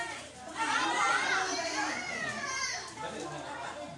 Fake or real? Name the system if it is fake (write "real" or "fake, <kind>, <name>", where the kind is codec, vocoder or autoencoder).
real